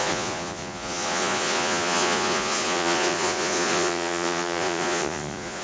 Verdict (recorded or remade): remade